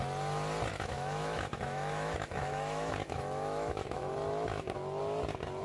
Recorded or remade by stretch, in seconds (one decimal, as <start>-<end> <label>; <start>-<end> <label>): 0.0-0.7 recorded; 0.7-4.1 remade; 4.1-5.6 recorded